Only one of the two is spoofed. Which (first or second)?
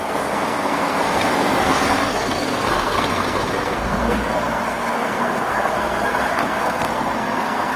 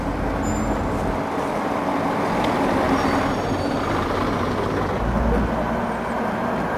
first